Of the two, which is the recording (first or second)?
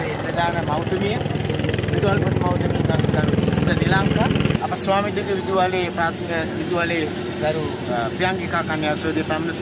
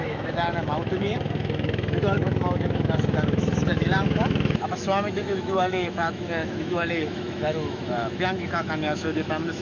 first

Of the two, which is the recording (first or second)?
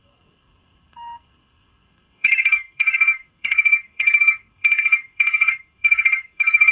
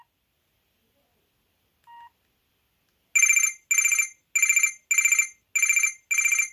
second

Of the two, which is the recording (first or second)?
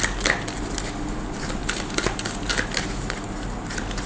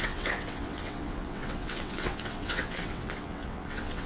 first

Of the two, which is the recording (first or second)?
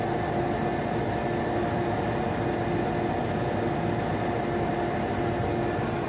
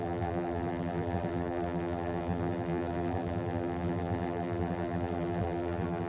first